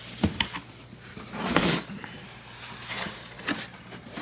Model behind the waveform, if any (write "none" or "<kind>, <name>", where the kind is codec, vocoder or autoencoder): vocoder, BigVGAN v2